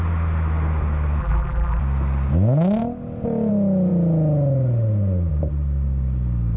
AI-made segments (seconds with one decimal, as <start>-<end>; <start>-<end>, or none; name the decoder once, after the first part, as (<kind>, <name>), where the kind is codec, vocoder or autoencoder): 1.2-1.8 (vocoder, BigVGAN v2)